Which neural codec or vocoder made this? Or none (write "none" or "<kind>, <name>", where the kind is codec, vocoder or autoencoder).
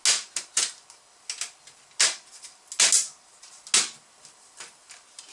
none